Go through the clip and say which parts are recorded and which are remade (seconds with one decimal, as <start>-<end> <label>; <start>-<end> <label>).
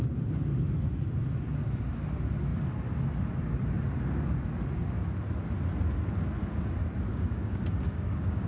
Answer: 0.0-7.1 recorded; 7.1-8.5 remade